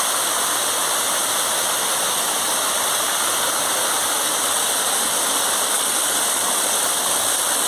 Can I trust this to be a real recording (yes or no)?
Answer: yes